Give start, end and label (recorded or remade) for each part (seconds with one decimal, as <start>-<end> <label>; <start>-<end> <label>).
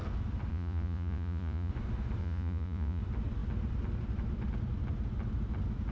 0.0-0.5 recorded; 0.5-1.7 remade; 1.7-2.2 recorded; 2.2-3.0 remade; 3.0-5.9 recorded